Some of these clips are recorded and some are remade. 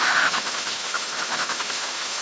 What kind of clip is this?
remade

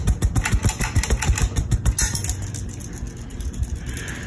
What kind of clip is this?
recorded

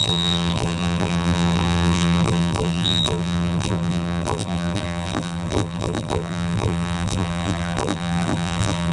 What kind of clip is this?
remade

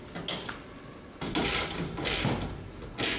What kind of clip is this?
recorded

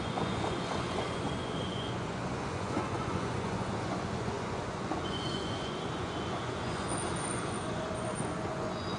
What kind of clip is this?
remade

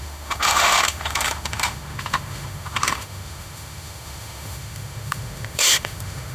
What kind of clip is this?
remade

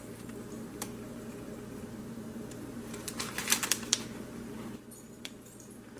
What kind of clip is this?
remade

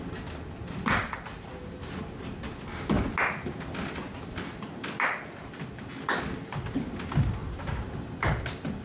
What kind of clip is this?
recorded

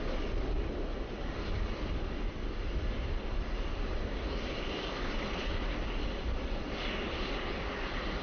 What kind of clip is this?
recorded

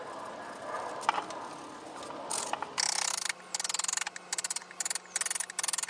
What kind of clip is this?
recorded